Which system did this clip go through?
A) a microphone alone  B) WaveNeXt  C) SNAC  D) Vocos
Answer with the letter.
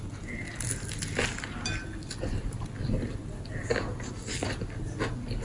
A